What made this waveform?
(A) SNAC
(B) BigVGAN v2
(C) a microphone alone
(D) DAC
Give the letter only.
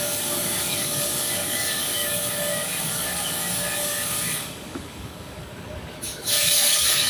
D